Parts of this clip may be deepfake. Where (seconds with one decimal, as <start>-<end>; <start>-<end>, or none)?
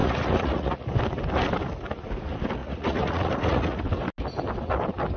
0.0-0.9; 2.6-3.8